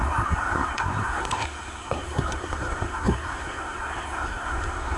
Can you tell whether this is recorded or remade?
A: remade